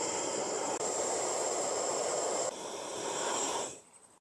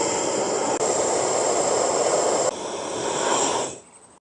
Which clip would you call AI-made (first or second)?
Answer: first